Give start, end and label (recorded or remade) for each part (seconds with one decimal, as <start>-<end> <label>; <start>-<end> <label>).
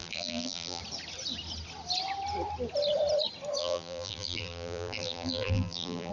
0.0-0.8 remade; 0.8-3.6 recorded; 3.6-6.1 remade